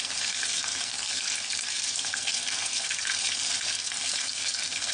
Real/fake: fake